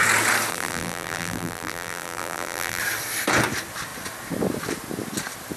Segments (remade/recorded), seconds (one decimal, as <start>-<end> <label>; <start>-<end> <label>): 0.0-0.5 recorded; 0.5-2.8 remade; 2.8-5.6 recorded